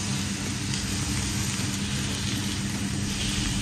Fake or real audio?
real